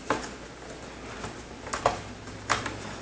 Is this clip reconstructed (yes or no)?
no